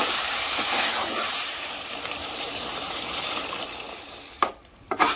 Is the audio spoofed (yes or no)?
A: yes